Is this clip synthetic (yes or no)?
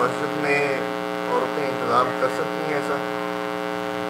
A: yes